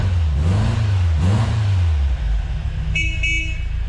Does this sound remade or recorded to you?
recorded